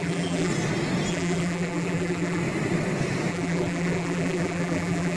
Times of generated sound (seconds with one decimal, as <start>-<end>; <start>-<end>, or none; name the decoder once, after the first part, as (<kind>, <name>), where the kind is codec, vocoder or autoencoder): 0.0-0.5 (vocoder, BigVGAN v2); 1.1-2.4; 3.3-5.2